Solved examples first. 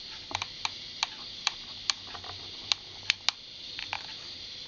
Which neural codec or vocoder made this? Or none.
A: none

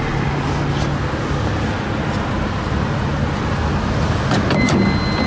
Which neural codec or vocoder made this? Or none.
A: none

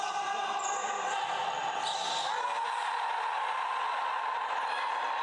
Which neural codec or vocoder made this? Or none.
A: none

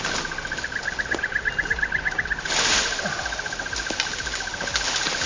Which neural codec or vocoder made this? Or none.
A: none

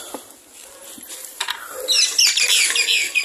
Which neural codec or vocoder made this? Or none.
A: none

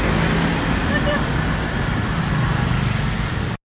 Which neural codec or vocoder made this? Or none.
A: none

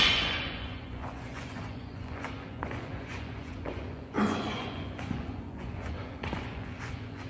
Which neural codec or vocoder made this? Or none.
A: vocoder, Vocos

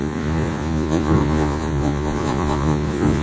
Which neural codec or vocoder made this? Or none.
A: vocoder, Vocos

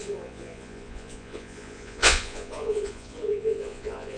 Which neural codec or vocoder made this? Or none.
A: vocoder, Vocos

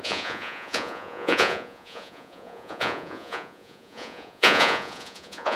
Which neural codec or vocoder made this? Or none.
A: vocoder, Vocos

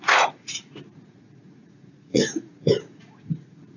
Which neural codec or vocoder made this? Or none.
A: vocoder, Vocos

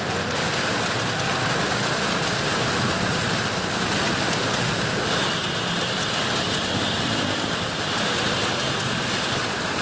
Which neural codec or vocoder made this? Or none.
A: none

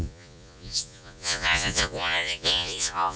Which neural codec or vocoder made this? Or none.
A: vocoder, Vocos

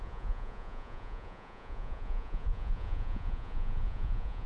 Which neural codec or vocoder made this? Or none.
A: vocoder, Vocos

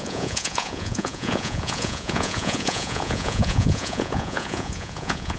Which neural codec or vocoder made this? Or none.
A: vocoder, Vocos